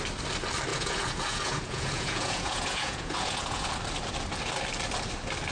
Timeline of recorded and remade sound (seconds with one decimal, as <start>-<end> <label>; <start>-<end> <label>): 0.0-0.7 recorded; 0.7-3.7 remade; 3.7-5.5 recorded